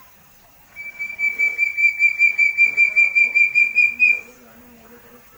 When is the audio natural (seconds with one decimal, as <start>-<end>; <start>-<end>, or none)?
0.0-5.4